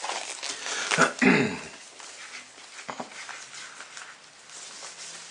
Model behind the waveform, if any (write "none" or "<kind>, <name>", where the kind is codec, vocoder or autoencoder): none